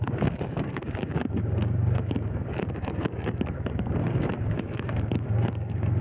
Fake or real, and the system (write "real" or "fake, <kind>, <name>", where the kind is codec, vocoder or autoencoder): fake, codec, DAC